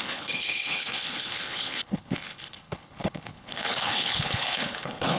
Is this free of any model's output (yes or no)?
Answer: no